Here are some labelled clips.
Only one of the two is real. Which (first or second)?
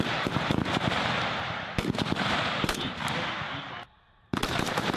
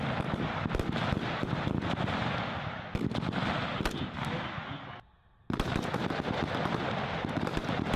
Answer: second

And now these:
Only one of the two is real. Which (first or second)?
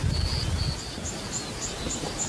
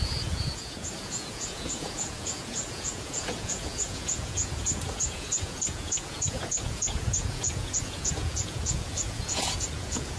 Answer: first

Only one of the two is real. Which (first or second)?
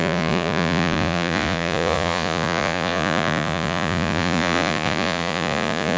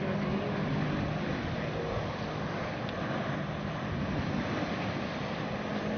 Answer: second